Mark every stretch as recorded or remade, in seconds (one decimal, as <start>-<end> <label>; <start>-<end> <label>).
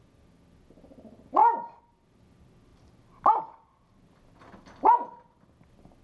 0.0-6.0 recorded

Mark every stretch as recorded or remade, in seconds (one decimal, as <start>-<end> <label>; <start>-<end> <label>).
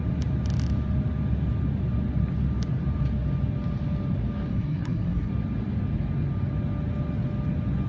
0.0-4.5 recorded; 4.5-5.3 remade; 5.3-7.9 recorded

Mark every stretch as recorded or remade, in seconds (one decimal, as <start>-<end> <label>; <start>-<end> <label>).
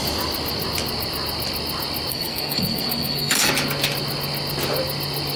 0.0-2.1 recorded; 2.1-3.5 remade; 3.5-5.4 recorded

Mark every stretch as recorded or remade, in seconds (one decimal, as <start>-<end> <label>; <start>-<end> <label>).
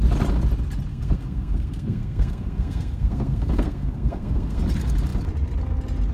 0.0-0.9 recorded; 0.9-4.6 remade; 4.6-6.1 recorded